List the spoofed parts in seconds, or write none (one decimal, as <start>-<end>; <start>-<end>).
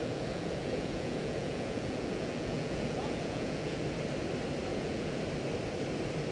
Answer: 0.0-3.8; 4.7-5.2